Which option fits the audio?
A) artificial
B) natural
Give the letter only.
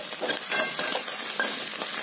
B